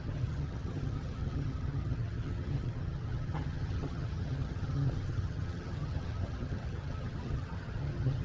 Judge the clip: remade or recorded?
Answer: remade